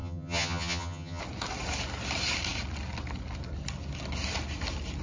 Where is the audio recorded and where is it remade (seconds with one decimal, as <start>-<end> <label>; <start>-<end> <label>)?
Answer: 0.0-1.2 remade; 1.2-5.0 recorded

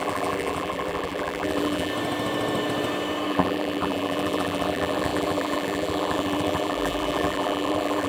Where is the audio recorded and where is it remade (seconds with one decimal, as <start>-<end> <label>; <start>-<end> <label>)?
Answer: 0.0-1.9 remade; 1.9-3.3 recorded; 3.3-8.1 remade

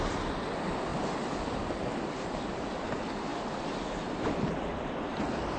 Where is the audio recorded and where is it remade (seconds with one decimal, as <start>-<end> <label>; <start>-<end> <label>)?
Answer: 0.0-5.6 recorded

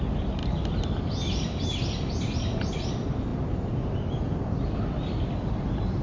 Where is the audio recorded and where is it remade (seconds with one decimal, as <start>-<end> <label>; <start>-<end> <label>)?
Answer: 0.0-6.0 recorded